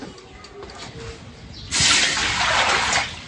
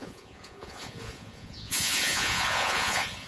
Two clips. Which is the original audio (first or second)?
first